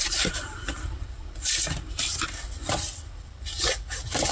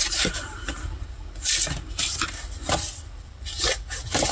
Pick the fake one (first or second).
first